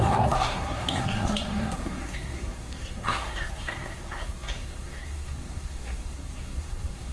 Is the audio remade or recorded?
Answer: remade